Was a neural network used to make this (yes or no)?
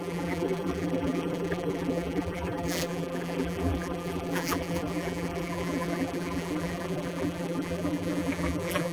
yes